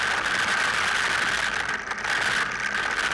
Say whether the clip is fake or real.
real